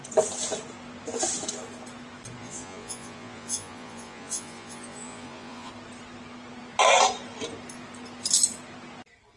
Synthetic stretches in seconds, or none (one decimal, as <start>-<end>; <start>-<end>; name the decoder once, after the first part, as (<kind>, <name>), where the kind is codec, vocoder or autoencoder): 2.4-5.7 (vocoder, Vocos)